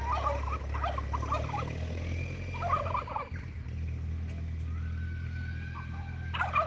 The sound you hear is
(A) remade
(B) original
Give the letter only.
B